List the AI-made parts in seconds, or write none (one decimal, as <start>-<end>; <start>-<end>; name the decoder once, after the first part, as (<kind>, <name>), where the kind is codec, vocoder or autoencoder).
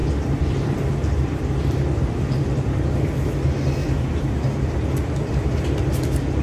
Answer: 0.0-3.3 (vocoder, BigVGAN v2); 3.8-5.9